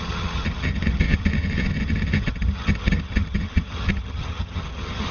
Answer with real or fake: fake